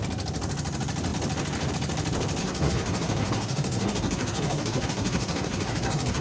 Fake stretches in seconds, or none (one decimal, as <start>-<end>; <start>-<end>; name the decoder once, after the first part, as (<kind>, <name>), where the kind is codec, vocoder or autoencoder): 2.4-6.2 (codec, SNAC)